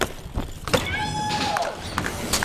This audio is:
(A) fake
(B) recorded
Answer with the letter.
A